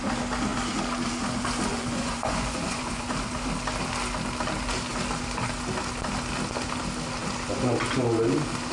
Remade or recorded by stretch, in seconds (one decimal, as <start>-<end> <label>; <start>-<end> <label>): 0.0-1.7 recorded; 1.7-3.1 remade; 3.1-8.7 recorded